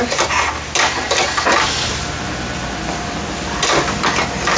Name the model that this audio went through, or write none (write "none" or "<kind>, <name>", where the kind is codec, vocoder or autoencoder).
none